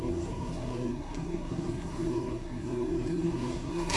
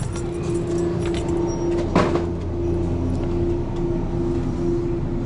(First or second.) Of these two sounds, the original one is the second